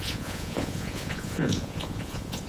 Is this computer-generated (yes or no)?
yes